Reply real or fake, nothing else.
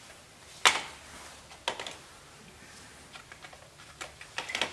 real